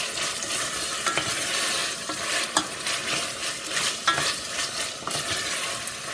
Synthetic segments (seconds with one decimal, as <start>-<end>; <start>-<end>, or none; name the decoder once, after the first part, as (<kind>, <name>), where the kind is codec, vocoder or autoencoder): none